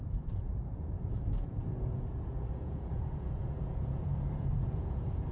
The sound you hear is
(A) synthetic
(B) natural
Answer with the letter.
A